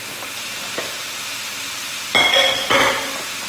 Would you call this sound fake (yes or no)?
no